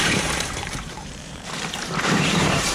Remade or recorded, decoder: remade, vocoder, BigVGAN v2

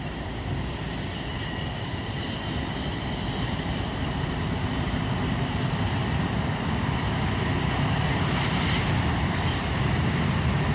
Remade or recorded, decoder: remade, vocoder, BigVGAN v2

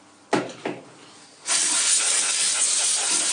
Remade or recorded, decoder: recorded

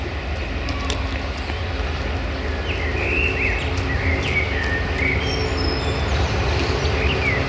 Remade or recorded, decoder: recorded